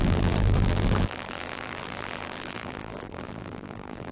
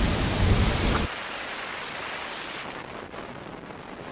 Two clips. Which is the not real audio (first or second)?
first